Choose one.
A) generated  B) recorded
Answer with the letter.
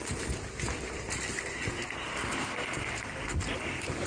B